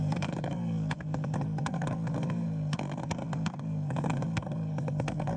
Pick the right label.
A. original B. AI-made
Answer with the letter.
B